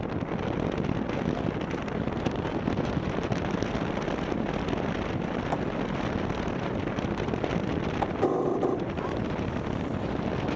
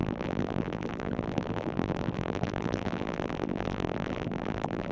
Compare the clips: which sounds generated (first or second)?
second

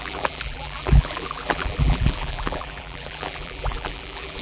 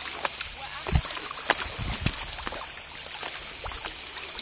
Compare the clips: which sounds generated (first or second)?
first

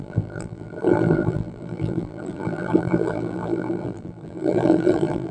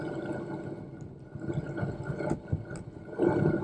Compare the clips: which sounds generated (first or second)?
first